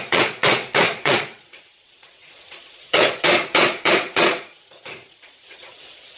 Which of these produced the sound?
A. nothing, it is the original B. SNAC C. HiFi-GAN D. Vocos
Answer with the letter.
D